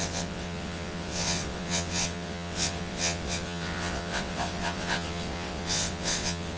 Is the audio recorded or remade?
remade